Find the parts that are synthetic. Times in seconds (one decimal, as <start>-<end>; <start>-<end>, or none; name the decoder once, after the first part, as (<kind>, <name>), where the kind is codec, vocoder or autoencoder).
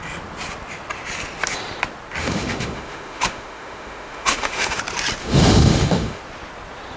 2.2-4.8 (autoencoder, DAC-VAE); 5.2-6.2